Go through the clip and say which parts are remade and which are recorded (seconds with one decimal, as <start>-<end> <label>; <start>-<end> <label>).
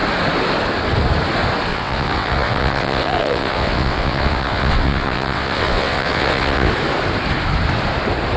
0.0-1.7 recorded; 1.7-6.7 remade; 6.7-8.4 recorded